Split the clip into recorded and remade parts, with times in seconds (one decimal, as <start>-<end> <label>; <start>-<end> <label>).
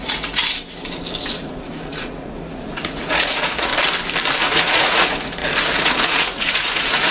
0.0-0.4 remade; 0.4-1.3 recorded; 1.3-3.7 remade; 3.7-4.4 recorded; 4.4-7.1 remade